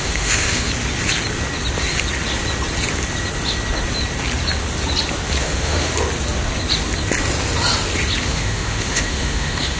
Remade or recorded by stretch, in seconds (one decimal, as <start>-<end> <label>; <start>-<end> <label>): 0.0-0.7 remade; 0.7-5.4 recorded; 5.4-5.9 remade; 5.9-8.2 recorded; 8.2-9.8 remade